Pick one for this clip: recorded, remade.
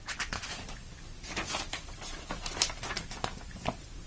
remade